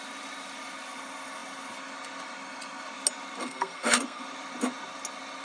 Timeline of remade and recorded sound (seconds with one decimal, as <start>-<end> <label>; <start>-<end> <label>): 0.0-3.4 recorded; 3.4-4.2 remade; 4.2-5.4 recorded